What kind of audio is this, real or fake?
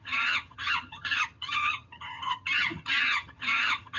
fake